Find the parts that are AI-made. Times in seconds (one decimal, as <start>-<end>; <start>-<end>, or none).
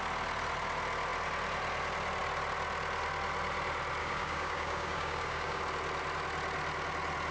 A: 4.0-5.6